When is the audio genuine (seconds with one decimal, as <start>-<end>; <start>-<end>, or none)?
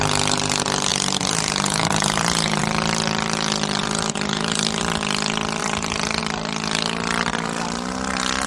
0.0-0.9; 2.6-3.8; 4.8-5.6; 6.2-8.5